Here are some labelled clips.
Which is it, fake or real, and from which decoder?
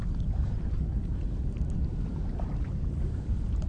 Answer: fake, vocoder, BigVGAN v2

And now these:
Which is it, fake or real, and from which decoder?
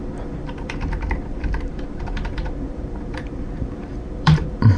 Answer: fake, vocoder, BigVGAN v2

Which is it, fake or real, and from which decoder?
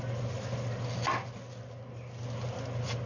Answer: real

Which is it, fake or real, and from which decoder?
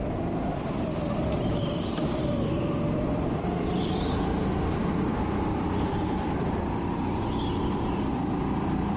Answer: fake, vocoder, BigVGAN v2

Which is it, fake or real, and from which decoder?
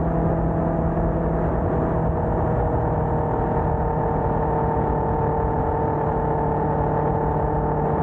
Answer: real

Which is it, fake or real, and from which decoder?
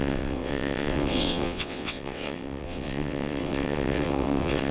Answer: fake, vocoder, WaveNeXt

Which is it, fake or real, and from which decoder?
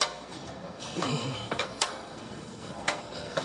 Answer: fake, codec, SNAC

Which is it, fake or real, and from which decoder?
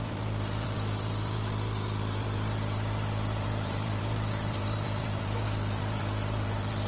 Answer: fake, vocoder, BigVGAN v2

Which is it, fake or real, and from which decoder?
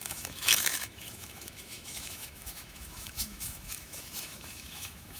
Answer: fake, autoencoder, DAC-VAE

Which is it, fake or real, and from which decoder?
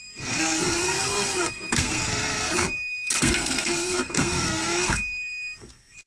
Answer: fake, codec, SNAC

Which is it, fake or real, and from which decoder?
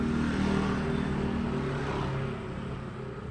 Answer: real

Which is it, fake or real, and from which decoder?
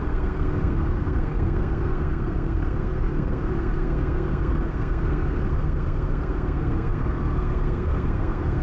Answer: fake, codec, SNAC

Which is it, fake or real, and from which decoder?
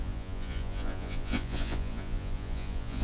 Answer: fake, vocoder, Vocos